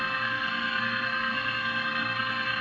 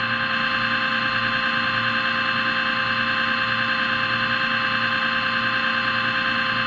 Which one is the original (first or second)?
second